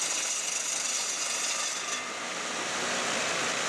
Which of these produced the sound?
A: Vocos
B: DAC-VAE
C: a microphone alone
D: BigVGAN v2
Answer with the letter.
D